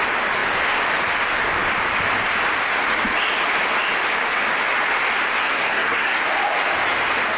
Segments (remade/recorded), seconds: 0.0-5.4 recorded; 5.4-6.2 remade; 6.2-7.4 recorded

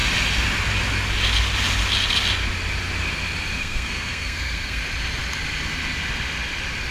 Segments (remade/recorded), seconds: 0.0-3.6 recorded; 3.6-4.8 remade; 4.8-6.9 recorded

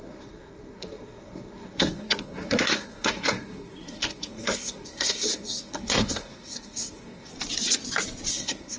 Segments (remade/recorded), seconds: 0.0-7.3 remade; 7.3-8.3 recorded; 8.3-8.8 remade

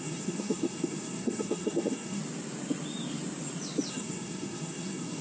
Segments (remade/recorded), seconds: 0.0-2.2 remade; 2.2-3.9 recorded; 3.9-5.2 remade

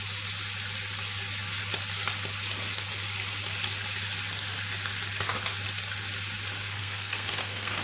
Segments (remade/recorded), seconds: 0.0-6.6 recorded; 6.6-7.8 remade

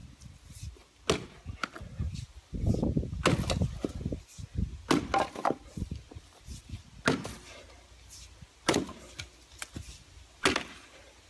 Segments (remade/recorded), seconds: 0.0-11.3 recorded